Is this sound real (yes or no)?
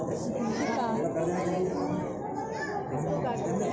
yes